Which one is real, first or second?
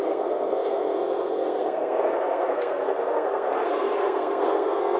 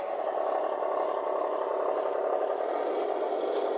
second